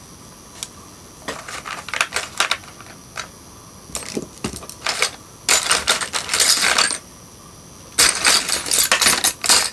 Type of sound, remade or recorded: recorded